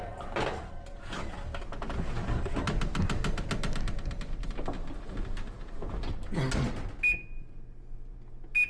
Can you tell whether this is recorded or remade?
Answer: recorded